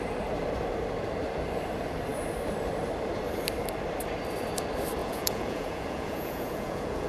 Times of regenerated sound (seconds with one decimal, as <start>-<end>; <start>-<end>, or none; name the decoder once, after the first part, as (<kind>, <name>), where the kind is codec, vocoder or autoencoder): 5.0-7.1 (vocoder, Vocos)